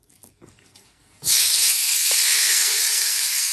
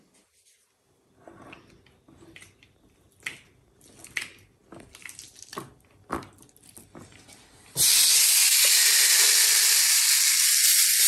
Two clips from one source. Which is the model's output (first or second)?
first